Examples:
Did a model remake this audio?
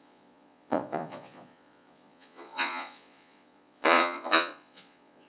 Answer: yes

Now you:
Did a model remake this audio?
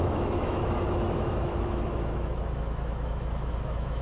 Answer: yes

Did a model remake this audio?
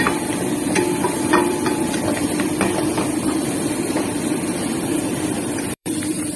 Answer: yes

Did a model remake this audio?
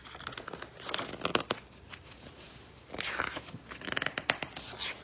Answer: no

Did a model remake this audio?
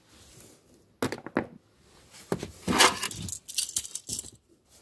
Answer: no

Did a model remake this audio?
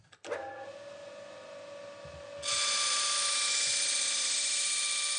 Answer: no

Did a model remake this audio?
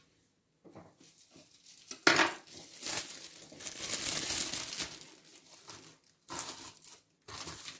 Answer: no